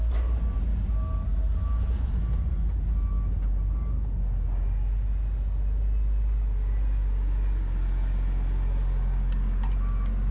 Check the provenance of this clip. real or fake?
real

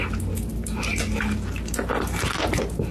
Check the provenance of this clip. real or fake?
real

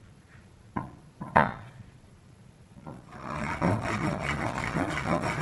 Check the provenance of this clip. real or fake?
fake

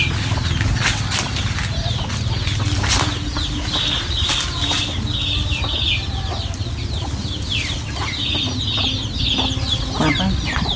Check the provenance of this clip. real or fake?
real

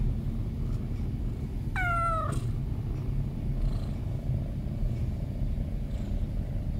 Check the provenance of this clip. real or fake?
real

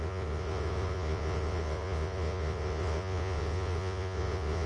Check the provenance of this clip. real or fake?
fake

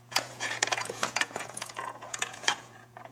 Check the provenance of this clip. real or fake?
fake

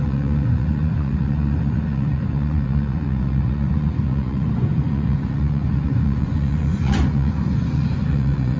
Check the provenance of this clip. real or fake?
fake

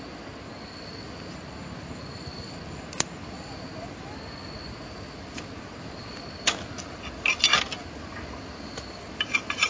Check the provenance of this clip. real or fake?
real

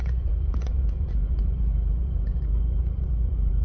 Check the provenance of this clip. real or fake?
fake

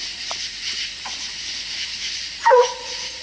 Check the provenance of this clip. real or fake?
fake